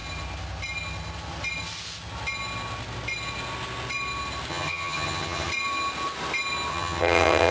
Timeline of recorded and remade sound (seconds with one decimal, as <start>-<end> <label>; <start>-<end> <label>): 0.0-4.5 recorded; 4.5-5.5 remade; 5.5-6.7 recorded; 6.7-7.5 remade